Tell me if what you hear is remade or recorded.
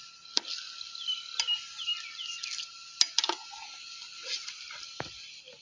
recorded